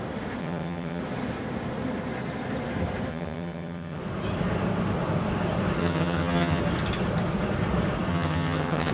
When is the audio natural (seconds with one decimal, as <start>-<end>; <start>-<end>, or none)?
0.0-0.4; 1.0-3.1; 4.0-5.8; 6.6-8.1